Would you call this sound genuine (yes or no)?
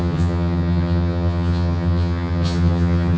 no